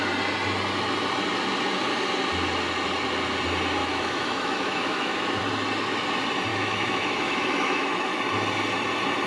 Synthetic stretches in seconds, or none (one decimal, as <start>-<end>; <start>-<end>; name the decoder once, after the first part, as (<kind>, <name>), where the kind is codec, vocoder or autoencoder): 3.8-5.4 (autoencoder, DAC-VAE); 6.5-8.2